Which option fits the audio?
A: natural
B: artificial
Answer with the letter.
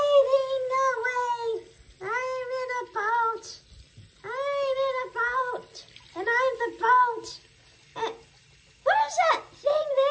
A